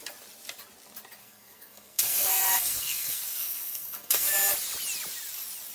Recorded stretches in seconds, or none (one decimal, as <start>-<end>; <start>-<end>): 0.0-1.2; 4.3-5.7